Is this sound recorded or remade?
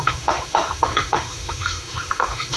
remade